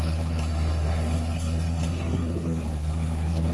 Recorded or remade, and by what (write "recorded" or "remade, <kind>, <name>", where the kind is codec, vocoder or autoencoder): remade, codec, SNAC